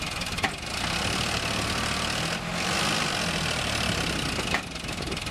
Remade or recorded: recorded